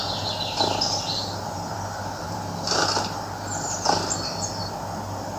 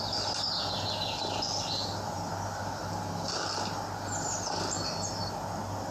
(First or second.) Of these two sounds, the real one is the second